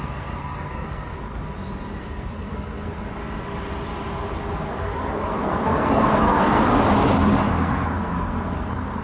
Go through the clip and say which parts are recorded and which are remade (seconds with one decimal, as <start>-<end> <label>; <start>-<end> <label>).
0.0-1.4 remade; 1.4-2.0 recorded; 2.0-3.2 remade; 3.2-4.7 recorded; 4.7-6.6 remade; 6.6-7.5 recorded; 7.5-9.0 remade